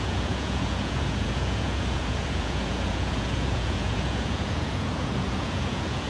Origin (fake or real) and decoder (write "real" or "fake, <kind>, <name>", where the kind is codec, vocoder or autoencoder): fake, vocoder, Vocos